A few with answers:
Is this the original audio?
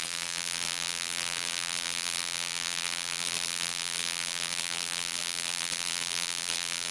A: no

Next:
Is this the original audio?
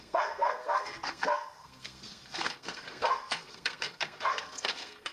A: no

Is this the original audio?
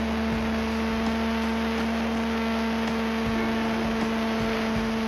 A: yes